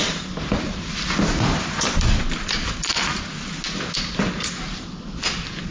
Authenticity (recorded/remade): recorded